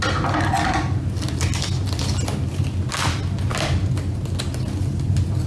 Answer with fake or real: real